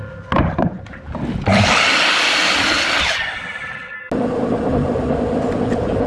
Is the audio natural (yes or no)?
yes